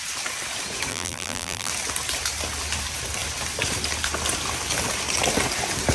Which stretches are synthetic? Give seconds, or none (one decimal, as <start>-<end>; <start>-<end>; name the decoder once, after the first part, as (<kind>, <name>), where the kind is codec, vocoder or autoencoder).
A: 0.9-1.7 (vocoder, BigVGAN v2)

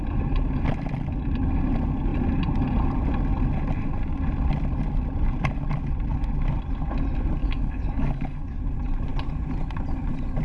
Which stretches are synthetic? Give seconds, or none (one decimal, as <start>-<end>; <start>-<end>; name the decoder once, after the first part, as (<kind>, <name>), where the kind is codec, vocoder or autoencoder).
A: 7.4-8.6 (codec, DAC)

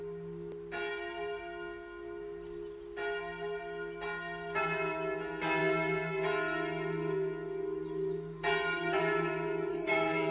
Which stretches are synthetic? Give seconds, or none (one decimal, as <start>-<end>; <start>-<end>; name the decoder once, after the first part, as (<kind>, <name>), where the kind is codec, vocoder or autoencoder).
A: 9.7-10.3 (codec, SNAC)

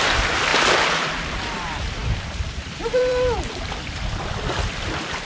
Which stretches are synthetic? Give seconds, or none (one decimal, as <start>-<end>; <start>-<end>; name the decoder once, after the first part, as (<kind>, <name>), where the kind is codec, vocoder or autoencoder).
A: 0.0-0.5 (vocoder, BigVGAN v2); 1.1-5.2

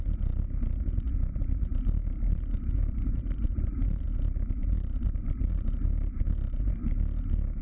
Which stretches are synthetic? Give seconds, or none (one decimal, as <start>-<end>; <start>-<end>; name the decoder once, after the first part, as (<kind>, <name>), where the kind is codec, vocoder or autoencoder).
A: 1.7-4.0 (vocoder, BigVGAN v2); 4.6-6.2